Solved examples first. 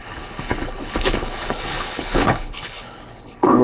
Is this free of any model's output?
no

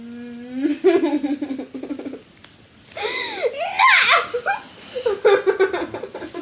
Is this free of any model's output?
yes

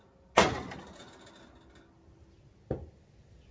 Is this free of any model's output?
yes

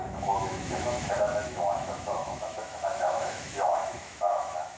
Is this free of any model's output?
no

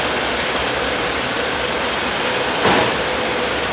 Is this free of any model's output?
yes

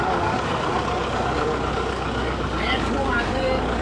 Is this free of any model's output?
no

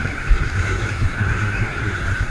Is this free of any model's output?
no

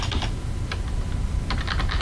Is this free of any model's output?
yes